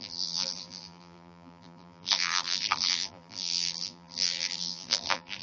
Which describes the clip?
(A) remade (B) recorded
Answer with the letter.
A